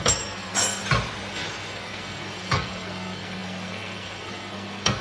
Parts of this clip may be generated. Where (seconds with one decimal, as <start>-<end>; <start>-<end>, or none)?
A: 0.0-0.8; 1.3-5.0